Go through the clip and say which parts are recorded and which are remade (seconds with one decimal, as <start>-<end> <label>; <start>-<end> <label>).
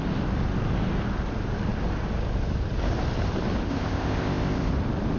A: 0.0-3.7 recorded; 3.7-4.7 remade; 4.7-5.2 recorded